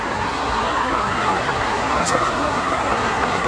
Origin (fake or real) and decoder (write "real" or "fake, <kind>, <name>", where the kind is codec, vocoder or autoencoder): fake, codec, SNAC